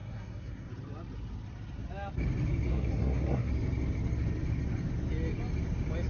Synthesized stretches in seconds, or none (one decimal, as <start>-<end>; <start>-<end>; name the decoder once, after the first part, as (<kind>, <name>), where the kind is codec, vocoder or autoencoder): 0.0-0.7 (codec, SNAC); 2.7-3.5

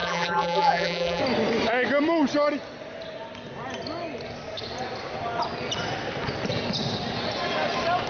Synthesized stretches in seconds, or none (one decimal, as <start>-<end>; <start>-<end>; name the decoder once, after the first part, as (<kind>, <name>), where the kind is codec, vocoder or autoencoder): 0.0-1.2 (vocoder, BigVGAN v2)